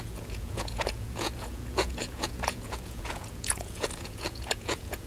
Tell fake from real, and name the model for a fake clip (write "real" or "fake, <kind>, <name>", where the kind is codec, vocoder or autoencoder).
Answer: fake, vocoder, Vocos